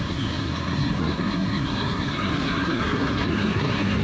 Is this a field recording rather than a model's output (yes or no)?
no